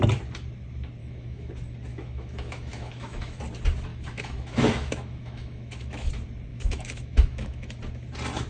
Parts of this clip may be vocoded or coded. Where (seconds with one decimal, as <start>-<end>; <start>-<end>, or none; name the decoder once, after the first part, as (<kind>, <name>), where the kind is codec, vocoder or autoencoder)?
1.0-1.5 (autoencoder, DAC-VAE); 1.9-3.4; 3.9-6.1; 6.5-7.8